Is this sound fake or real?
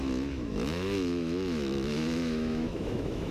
fake